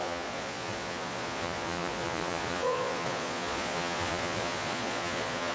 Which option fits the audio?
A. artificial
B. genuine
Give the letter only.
A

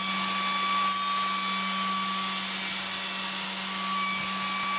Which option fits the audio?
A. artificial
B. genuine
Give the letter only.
B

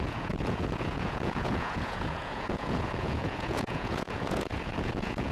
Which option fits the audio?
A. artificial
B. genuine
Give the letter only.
A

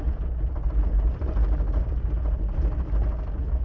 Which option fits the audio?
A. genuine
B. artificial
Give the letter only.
A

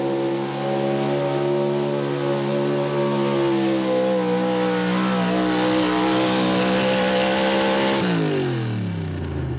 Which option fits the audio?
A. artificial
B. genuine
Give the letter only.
B